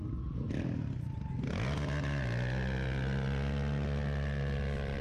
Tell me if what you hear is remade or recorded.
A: recorded